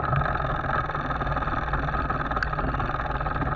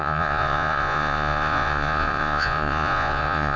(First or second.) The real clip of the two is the first